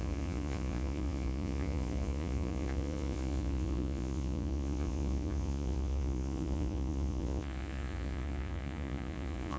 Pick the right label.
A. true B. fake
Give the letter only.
B